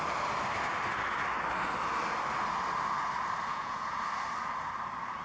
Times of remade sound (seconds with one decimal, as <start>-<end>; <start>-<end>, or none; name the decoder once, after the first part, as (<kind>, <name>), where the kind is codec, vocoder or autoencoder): 3.5-4.0 (vocoder, Vocos)